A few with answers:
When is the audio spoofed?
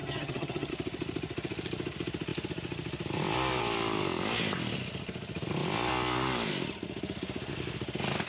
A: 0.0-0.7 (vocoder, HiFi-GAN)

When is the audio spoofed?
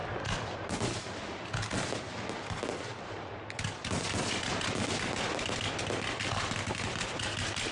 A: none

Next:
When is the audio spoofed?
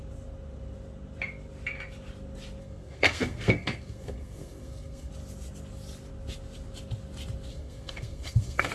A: 2.6-5.1 (codec, SNAC); 7.5-8.7